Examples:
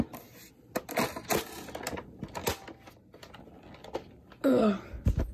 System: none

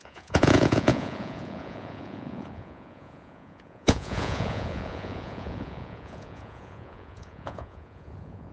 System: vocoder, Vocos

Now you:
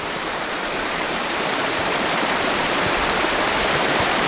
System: vocoder, BigVGAN v2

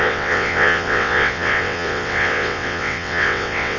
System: vocoder, WaveNeXt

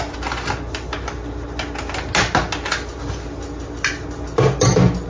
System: none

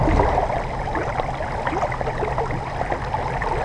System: none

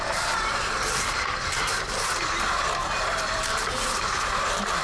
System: vocoder, BigVGAN v2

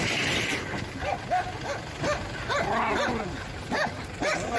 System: none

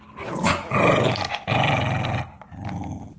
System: none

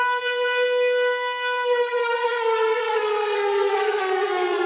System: codec, SNAC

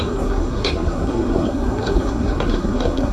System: codec, SNAC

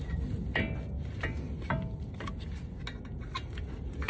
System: none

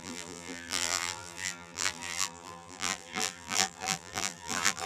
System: vocoder, BigVGAN v2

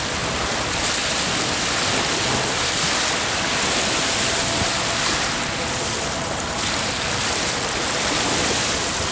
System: none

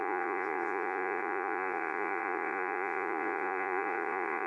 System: vocoder, Vocos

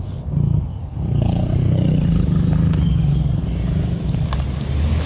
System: none